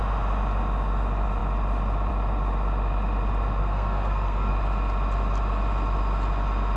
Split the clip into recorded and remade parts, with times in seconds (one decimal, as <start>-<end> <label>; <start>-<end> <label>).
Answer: 0.0-3.6 recorded; 3.6-4.5 remade; 4.5-6.8 recorded